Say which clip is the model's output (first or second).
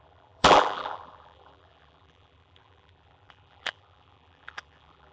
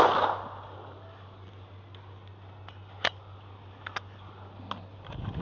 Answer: first